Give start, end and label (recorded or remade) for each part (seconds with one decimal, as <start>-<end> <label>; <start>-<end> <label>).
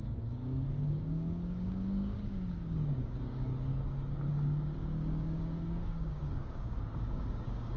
0.0-3.7 remade; 3.7-4.3 recorded; 4.3-7.8 remade